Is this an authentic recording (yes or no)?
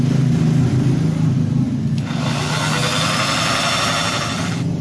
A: yes